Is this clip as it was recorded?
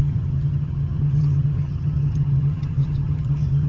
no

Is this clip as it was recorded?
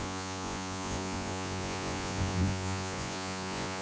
no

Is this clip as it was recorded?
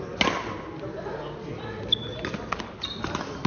yes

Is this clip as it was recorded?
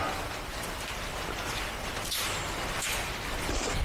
yes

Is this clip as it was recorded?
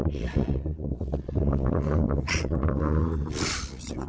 no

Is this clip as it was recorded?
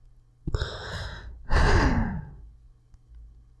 yes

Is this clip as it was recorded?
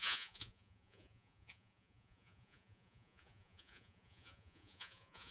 no